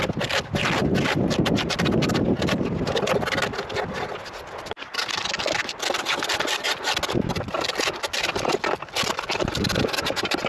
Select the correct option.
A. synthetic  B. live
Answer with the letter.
B